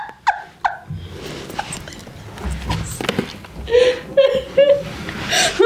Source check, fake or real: real